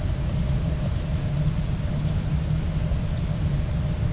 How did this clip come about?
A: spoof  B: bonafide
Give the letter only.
B